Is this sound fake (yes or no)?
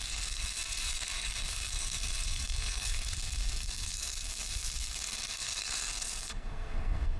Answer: yes